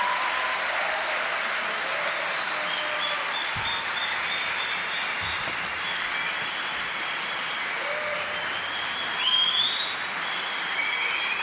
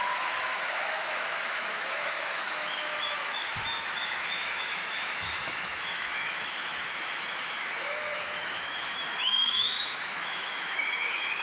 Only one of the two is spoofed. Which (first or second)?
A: second